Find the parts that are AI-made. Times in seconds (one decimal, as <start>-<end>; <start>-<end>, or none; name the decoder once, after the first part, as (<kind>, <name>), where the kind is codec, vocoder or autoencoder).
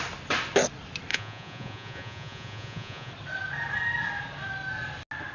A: 1.1-3.1 (vocoder, Vocos)